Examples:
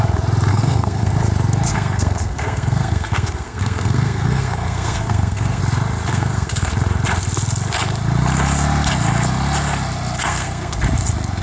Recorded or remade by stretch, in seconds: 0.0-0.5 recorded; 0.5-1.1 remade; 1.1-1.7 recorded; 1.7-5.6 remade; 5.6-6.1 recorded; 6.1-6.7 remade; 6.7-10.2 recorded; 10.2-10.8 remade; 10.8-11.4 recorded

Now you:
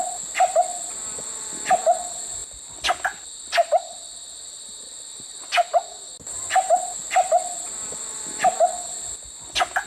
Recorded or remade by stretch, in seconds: 0.0-2.4 recorded; 2.4-5.1 remade; 5.1-9.9 recorded